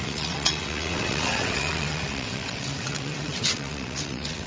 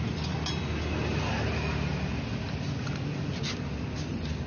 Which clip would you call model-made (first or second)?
first